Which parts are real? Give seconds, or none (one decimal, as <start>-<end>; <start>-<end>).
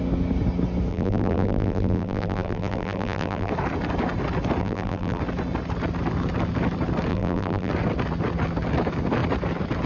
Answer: 0.0-0.9; 3.5-4.6; 5.2-7.1; 7.7-9.9